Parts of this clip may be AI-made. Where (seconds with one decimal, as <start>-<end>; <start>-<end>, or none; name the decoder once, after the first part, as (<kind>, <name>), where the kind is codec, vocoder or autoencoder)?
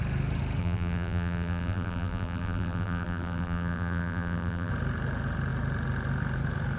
0.6-4.7 (vocoder, BigVGAN v2)